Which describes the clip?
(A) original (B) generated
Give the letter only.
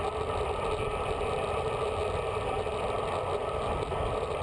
A